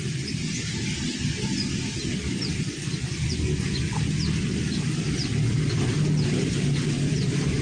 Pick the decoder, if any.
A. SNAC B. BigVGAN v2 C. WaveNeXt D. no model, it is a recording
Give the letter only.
D